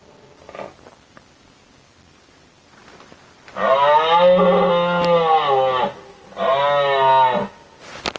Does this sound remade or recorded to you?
recorded